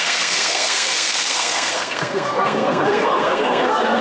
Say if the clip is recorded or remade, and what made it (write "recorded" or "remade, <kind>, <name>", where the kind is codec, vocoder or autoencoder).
remade, codec, SNAC